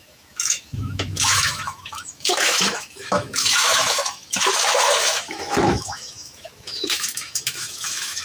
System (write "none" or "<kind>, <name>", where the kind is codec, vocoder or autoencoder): autoencoder, DAC-VAE